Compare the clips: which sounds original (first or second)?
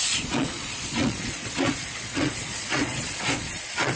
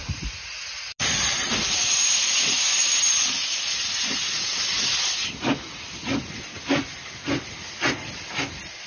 second